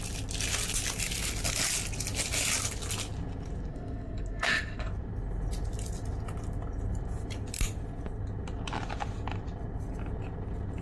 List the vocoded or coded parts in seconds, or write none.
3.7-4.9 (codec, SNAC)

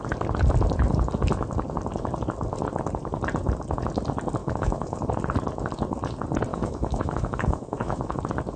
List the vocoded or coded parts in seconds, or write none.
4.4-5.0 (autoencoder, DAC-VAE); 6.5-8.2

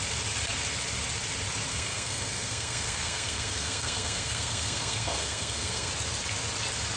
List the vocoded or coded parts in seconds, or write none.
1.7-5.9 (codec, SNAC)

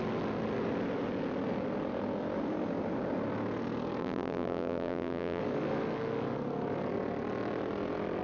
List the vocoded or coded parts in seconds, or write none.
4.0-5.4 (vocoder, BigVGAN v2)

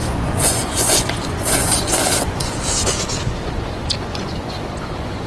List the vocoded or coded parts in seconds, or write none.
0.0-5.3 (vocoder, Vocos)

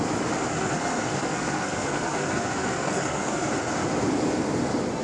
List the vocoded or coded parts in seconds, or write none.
0.5-3.5 (codec, SNAC)

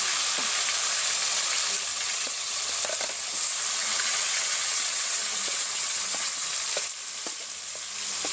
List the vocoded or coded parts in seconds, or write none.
1.9-2.6 (vocoder, WaveNeXt); 3.8-6.5